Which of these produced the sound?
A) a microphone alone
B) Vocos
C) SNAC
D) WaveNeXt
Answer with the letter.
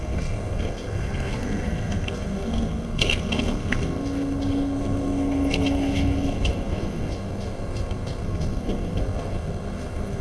C